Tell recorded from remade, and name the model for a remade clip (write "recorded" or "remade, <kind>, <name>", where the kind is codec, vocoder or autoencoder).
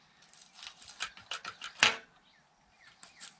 recorded